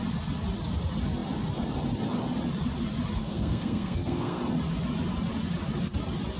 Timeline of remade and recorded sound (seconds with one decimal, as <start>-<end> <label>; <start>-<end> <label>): 0.0-3.2 recorded; 3.2-4.4 remade; 4.4-6.4 recorded